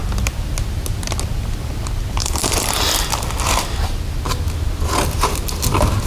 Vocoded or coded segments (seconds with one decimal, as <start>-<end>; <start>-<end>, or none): 2.2-2.9